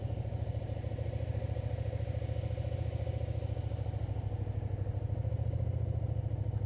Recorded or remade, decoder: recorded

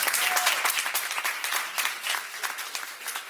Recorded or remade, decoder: remade, vocoder, BigVGAN v2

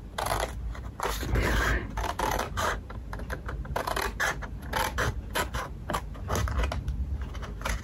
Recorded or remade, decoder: recorded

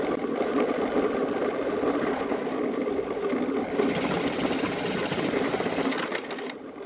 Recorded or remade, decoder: recorded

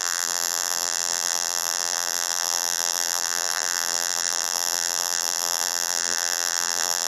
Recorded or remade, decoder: remade, vocoder, BigVGAN v2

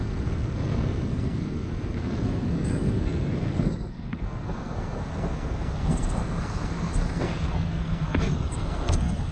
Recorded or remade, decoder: remade, codec, SNAC